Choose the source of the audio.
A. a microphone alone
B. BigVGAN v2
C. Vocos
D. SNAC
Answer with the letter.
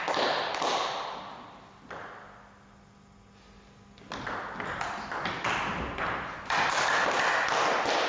A